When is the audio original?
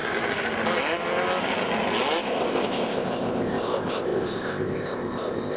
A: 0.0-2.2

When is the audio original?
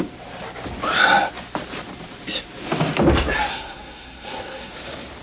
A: 0.0-3.5; 4.7-5.2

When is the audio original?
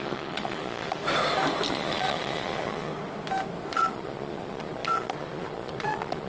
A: 1.0-1.7; 2.9-3.7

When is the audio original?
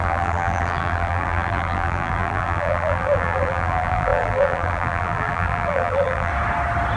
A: 6.3-7.0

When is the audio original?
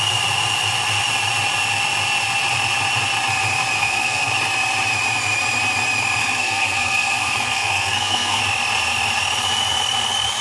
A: 0.0-3.8; 4.3-6.2; 8.4-10.4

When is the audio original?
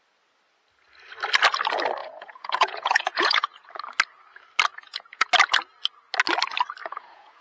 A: 0.0-2.0; 3.7-4.7; 5.3-6.8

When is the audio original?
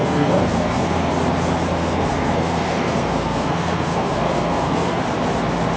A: 1.1-1.8; 5.0-5.8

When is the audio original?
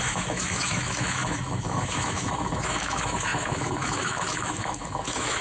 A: none